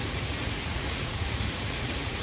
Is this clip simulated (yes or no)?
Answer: yes